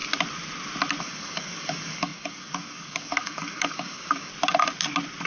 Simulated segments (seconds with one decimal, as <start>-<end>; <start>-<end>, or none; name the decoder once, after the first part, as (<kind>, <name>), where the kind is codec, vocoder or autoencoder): 1.0-4.3 (codec, DAC)